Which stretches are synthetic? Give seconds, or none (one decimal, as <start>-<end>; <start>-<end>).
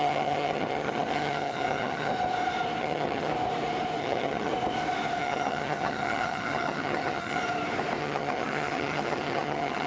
0.0-2.1; 2.8-3.3; 4.0-4.5; 5.2-7.4; 8.0-9.9